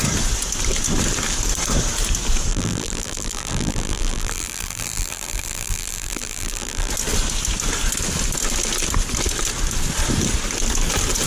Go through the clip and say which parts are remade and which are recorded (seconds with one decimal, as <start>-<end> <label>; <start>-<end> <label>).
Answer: 0.0-2.5 recorded; 2.5-6.9 remade; 6.9-11.3 recorded